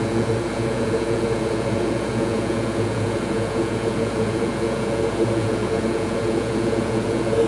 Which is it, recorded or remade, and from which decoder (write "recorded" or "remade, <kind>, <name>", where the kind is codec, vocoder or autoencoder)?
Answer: remade, vocoder, Vocos